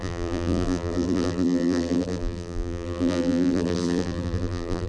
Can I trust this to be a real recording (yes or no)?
no